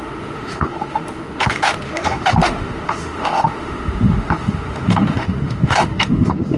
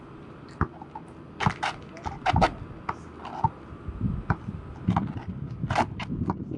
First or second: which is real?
second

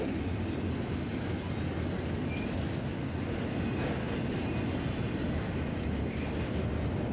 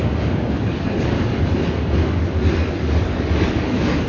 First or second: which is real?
first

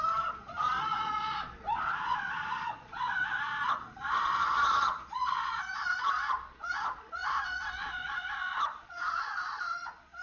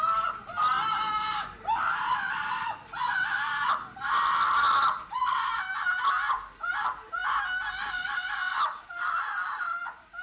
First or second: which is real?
second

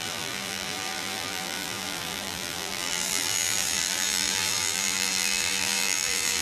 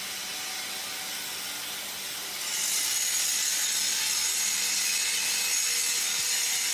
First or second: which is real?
second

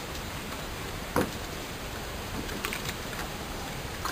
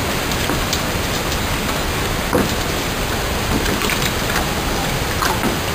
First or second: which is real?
second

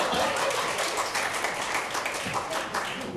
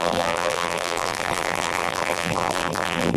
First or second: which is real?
first